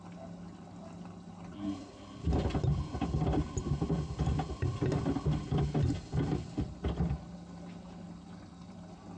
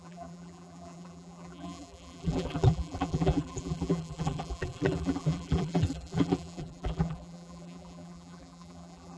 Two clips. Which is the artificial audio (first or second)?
second